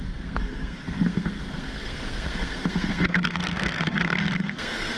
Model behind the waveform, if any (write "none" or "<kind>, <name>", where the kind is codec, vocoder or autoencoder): codec, SNAC